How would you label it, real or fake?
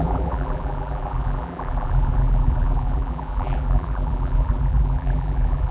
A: fake